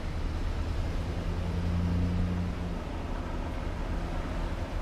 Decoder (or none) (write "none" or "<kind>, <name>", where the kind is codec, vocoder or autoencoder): none